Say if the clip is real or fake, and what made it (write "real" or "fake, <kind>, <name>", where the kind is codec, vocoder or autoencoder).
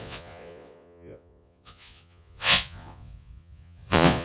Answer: fake, vocoder, Vocos